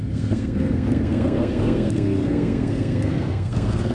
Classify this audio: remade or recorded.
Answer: remade